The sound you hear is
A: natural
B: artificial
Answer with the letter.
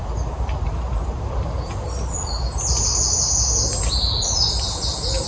A